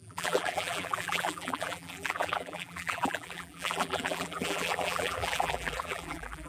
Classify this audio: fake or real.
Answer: fake